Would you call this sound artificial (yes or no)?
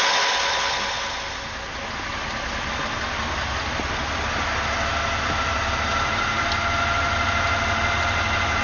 no